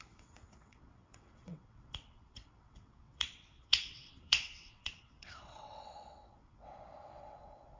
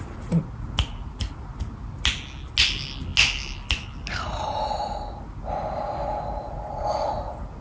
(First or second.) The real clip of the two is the second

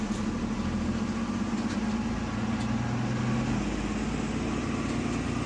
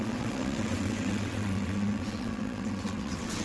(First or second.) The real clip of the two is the first